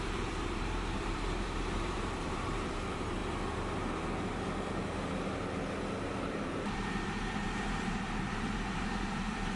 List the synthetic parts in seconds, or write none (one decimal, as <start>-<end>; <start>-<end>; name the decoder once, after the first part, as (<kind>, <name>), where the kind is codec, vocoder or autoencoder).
0.0-3.2 (vocoder, BigVGAN v2); 6.3-9.6